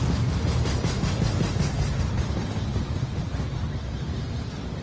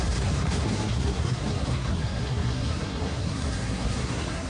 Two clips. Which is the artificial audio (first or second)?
second